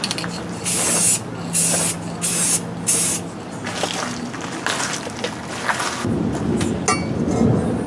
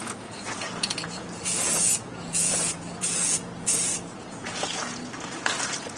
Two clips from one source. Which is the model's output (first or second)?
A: second